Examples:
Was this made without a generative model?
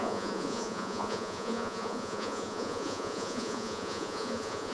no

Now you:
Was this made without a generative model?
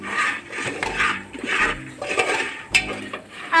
no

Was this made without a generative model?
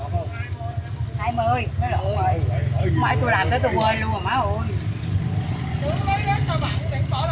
yes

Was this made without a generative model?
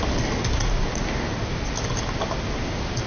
yes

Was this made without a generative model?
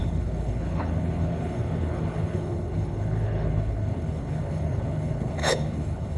no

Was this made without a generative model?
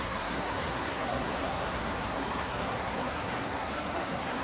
no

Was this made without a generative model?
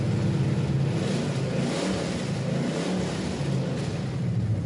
yes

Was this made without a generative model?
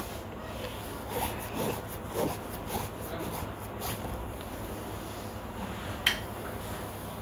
yes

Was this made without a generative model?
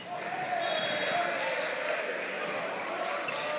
yes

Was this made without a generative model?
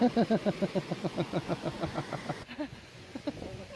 no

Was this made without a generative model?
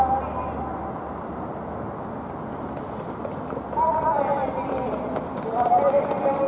yes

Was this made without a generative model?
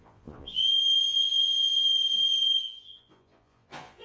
no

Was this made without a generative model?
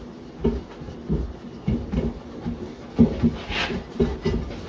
yes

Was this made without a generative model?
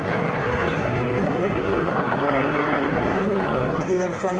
no